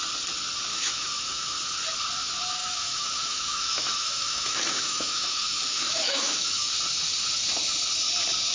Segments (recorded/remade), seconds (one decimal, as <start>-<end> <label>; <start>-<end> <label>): 0.0-0.7 recorded; 0.7-1.5 remade; 1.5-2.6 recorded; 2.6-6.7 remade; 6.7-8.5 recorded